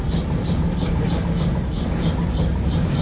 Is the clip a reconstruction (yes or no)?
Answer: no